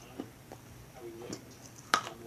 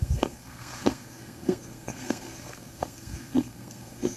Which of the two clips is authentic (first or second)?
first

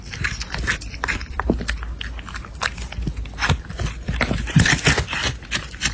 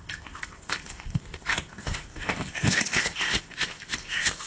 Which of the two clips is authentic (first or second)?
first